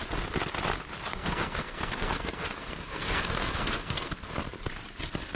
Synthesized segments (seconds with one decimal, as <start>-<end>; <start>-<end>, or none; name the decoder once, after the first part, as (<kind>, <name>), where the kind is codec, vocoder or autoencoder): 1.1-4.3 (codec, SNAC)